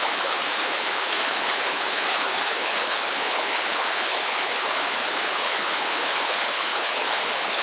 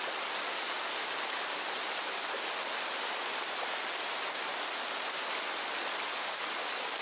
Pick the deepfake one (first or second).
first